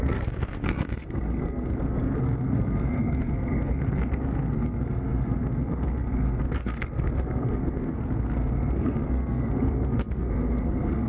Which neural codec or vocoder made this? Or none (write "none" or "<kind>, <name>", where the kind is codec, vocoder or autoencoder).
codec, SNAC